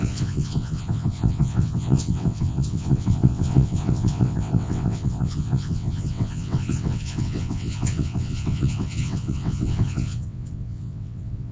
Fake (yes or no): yes